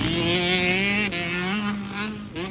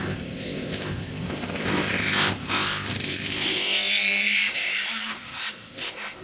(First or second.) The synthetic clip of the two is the second